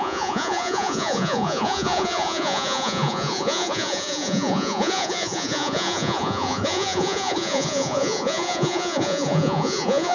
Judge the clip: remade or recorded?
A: remade